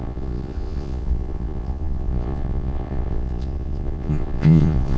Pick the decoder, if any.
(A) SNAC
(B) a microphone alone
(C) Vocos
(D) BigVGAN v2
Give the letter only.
C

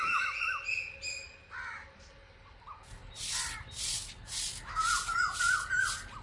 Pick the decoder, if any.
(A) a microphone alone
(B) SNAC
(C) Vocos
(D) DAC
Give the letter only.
A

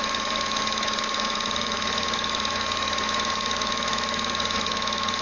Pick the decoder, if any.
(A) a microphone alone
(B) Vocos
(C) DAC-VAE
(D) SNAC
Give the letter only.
C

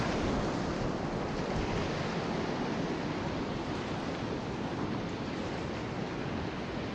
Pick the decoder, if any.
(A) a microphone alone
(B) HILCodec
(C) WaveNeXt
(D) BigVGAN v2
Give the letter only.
A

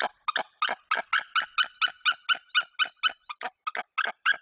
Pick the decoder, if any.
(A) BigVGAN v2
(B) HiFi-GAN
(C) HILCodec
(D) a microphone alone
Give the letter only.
D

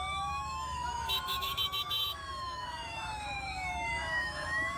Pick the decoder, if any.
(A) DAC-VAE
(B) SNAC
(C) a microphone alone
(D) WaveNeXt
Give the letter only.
A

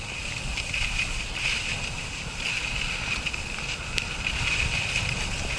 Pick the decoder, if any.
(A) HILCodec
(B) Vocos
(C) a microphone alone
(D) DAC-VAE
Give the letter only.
C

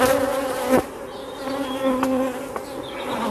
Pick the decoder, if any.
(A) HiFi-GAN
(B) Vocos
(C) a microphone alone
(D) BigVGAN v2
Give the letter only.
C